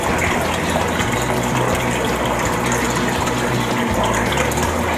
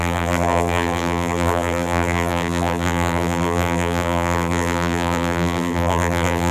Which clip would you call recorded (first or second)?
first